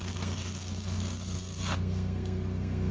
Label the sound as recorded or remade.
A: remade